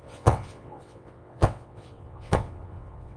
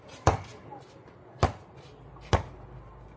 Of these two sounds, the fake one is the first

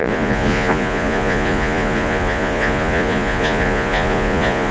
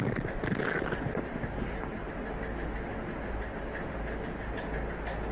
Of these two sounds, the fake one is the first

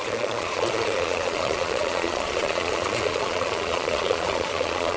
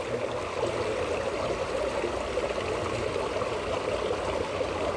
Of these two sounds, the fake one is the first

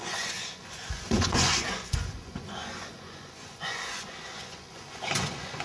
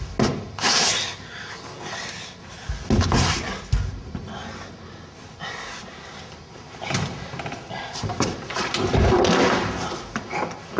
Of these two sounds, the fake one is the first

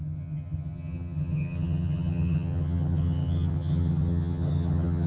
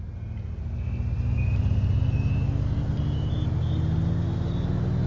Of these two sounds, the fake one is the first